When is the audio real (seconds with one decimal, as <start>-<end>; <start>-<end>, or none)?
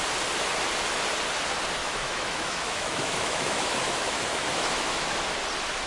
0.0-1.8; 5.3-5.9